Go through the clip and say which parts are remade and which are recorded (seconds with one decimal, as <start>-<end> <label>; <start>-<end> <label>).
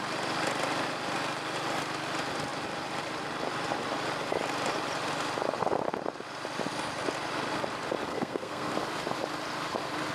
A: 0.0-8.1 recorded; 8.1-8.7 remade; 8.7-10.1 recorded